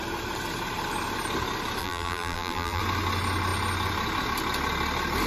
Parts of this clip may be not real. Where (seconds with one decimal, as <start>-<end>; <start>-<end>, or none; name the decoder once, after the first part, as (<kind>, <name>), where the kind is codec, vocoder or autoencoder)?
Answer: 1.8-2.8 (vocoder, BigVGAN v2)